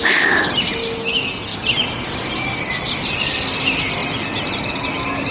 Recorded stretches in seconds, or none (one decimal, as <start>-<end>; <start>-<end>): 0.0-5.3